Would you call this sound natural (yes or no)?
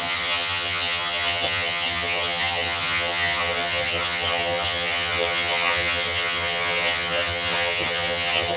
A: no